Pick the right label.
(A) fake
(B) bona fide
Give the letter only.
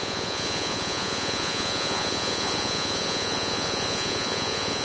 A